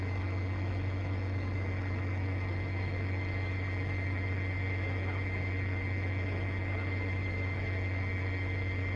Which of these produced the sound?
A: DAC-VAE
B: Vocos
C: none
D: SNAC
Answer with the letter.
A